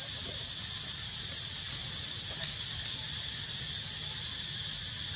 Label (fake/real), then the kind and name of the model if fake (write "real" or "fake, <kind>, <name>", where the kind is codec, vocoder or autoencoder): real